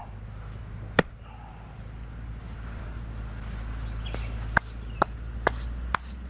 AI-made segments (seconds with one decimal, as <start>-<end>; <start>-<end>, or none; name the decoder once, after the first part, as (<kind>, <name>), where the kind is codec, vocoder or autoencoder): none